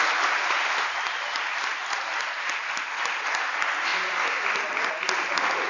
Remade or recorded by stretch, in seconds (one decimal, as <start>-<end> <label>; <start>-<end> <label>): 0.0-5.7 recorded